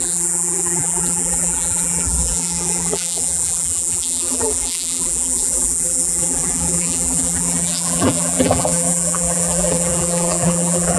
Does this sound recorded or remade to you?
remade